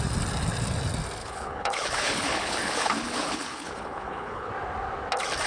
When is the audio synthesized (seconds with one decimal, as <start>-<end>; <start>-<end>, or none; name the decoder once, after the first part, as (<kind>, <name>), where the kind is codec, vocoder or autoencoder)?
1.2-4.5 (codec, HILCodec)